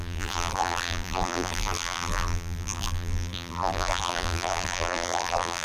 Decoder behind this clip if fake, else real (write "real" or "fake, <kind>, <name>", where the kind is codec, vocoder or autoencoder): fake, vocoder, BigVGAN v2